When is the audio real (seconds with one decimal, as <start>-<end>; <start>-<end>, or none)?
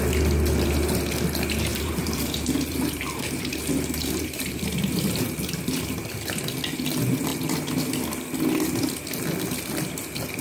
0.0-1.7; 6.1-10.4